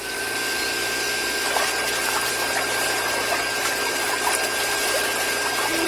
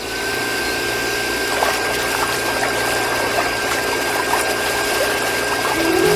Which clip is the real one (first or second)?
first